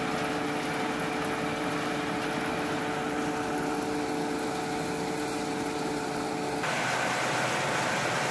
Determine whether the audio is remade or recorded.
recorded